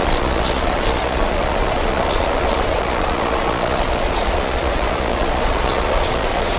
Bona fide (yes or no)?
no